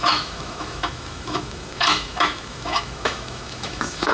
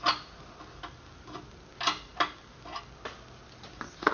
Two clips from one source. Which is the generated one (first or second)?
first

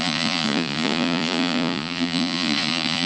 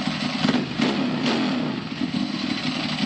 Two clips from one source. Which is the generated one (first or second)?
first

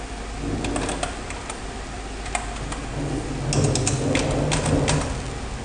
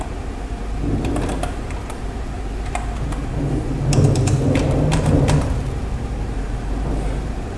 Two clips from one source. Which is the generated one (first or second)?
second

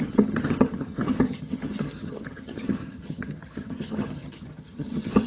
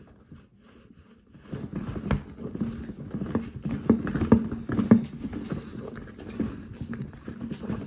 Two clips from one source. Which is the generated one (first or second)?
first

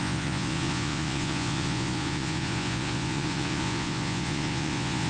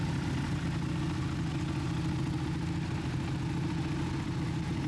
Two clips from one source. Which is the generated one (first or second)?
first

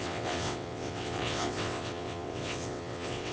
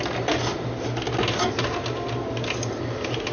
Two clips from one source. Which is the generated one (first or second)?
first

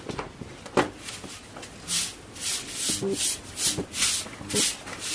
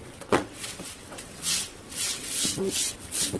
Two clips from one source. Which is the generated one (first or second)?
second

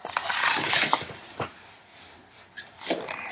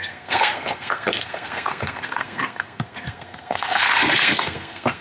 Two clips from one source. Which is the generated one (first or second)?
second